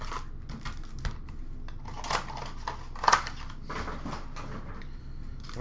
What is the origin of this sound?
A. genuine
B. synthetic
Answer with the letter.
A